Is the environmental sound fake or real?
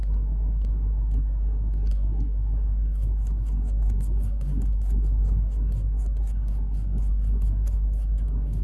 fake